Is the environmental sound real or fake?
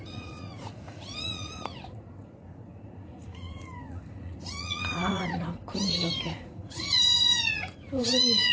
fake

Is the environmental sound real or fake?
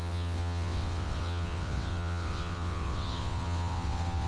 fake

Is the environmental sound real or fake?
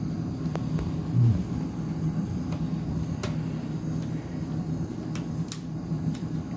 real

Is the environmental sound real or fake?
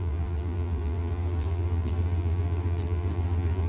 fake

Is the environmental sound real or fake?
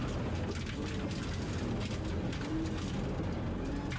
real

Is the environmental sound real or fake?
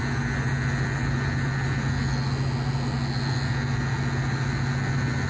real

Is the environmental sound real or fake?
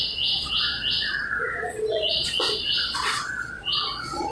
fake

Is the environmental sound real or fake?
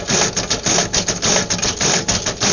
real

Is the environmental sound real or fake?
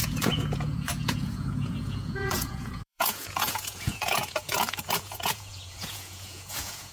fake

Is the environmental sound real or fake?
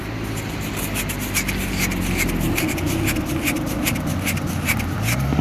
fake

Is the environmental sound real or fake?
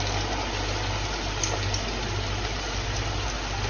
real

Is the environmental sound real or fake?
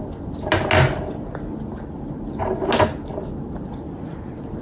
real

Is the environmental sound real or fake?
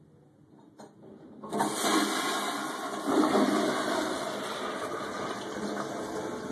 real